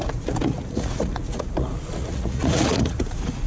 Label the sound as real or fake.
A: fake